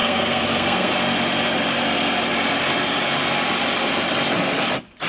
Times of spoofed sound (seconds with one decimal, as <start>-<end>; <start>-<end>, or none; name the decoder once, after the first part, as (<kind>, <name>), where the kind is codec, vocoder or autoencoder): 0.0-0.9 (codec, SNAC)